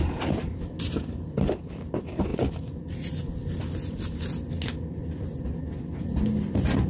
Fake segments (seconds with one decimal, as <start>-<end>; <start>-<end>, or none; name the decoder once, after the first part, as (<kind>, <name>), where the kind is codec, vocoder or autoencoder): none